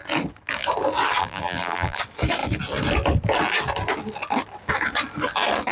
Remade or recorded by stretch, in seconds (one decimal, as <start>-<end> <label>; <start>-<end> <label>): 0.0-1.2 recorded; 1.2-2.0 remade; 2.0-5.7 recorded